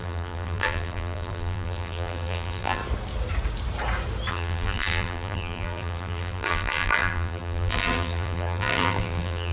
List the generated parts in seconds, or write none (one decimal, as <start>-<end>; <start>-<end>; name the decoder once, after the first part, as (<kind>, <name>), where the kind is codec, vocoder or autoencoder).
0.0-2.8 (vocoder, BigVGAN v2); 4.3-9.5

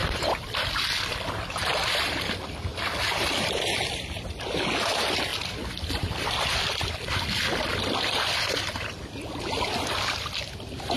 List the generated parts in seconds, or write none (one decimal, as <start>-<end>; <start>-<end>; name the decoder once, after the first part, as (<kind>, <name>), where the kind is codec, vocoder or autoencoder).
0.0-2.7 (vocoder, BigVGAN v2); 3.4-11.0

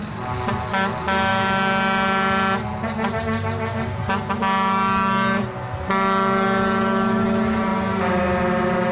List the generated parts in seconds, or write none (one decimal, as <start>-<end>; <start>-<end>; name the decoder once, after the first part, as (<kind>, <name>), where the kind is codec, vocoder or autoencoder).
none

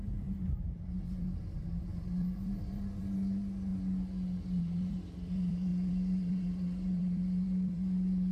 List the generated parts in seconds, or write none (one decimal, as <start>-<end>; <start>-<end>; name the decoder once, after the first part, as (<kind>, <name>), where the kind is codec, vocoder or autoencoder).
0.0-3.7 (vocoder, BigVGAN v2); 4.6-8.3

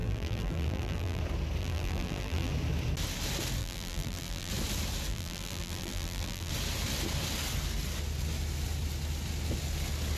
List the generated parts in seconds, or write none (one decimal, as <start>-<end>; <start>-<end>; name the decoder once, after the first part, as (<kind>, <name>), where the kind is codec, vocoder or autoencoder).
0.0-1.2 (vocoder, BigVGAN v2); 1.6-2.5; 3.6-4.5; 5.1-6.5

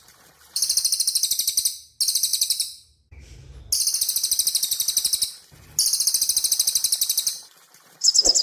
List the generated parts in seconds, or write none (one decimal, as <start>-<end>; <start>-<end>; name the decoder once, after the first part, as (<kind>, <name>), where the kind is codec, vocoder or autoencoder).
2.3-3.6 (vocoder, BigVGAN v2)

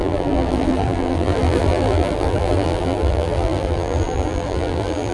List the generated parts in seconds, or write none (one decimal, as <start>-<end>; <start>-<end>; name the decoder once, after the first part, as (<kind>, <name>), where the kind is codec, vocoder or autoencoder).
0.0-5.1 (vocoder, BigVGAN v2)

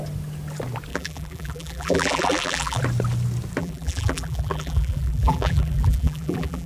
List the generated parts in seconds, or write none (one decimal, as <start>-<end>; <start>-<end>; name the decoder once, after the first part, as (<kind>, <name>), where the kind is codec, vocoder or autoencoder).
0.9-2.8 (vocoder, BigVGAN v2); 3.6-6.7